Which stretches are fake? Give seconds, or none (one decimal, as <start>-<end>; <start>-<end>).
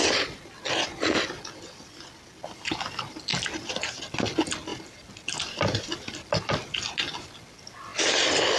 4.7-6.7